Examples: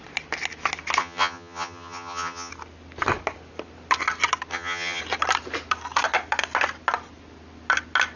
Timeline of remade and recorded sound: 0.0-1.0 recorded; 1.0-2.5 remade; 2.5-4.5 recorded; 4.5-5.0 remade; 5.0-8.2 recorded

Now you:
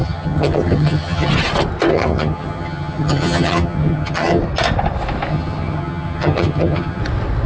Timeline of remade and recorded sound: 0.0-1.3 remade; 1.3-1.9 recorded; 1.9-4.4 remade; 4.4-5.3 recorded; 5.3-7.0 remade; 7.0-7.5 recorded

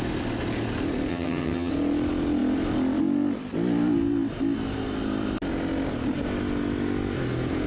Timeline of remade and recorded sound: 0.0-1.1 recorded; 1.1-1.7 remade; 1.7-7.7 recorded

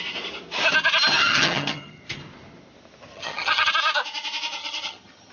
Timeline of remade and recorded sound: 0.0-1.2 recorded; 1.2-2.0 remade; 2.0-3.1 recorded; 3.1-3.7 remade; 3.7-4.6 recorded; 4.6-5.3 remade